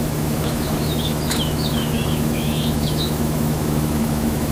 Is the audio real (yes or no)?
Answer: no